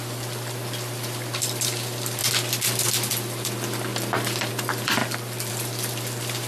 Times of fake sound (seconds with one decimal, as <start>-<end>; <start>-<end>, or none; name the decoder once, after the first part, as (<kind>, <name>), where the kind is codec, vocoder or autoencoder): 0.0-2.2 (vocoder, BigVGAN v2); 3.1-3.9; 4.5-5.0; 5.5-6.5